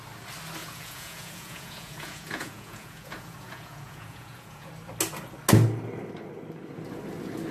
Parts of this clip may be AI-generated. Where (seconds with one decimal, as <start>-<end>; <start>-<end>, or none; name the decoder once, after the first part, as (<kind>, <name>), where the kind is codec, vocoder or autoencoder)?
0.6-4.7 (vocoder, Vocos)